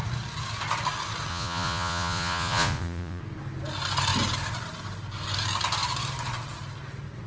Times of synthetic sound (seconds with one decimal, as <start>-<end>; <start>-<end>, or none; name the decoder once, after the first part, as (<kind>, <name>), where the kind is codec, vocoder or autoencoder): 1.3-3.2 (vocoder, Vocos)